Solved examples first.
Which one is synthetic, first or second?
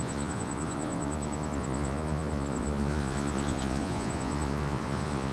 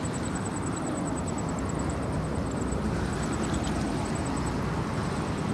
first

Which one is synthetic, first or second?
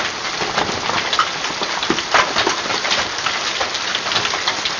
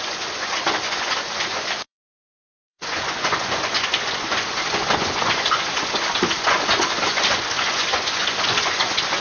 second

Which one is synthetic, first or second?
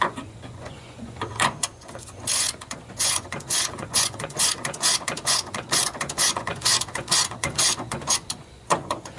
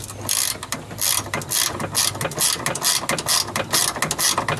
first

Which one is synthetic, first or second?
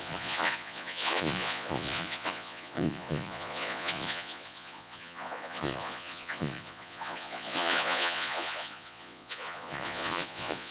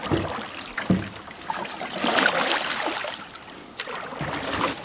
first